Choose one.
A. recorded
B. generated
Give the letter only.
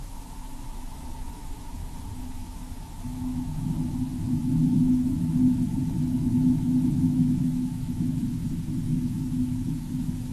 B